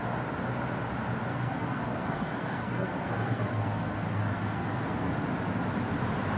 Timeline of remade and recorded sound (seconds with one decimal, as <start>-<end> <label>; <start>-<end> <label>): 0.0-1.3 recorded; 1.3-5.1 remade; 5.1-6.4 recorded

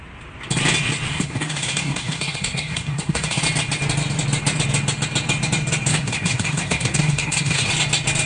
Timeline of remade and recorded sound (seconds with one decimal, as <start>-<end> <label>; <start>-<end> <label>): 0.0-1.1 recorded; 1.1-3.4 remade; 3.4-5.9 recorded; 5.9-7.7 remade; 7.7-8.3 recorded